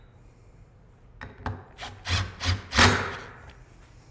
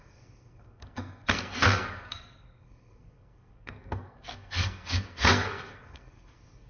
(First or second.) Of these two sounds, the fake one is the second